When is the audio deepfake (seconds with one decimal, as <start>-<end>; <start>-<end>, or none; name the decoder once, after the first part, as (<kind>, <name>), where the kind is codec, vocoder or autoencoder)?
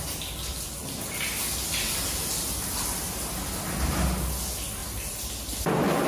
4.8-6.1 (vocoder, BigVGAN v2)